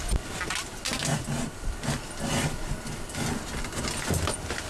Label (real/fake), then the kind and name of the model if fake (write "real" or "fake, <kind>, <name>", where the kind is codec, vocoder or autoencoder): real